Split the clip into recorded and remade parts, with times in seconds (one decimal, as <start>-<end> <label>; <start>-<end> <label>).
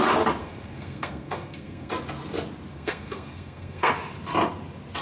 0.0-0.4 recorded; 0.4-1.9 remade; 1.9-2.7 recorded; 2.7-3.9 remade; 3.9-5.0 recorded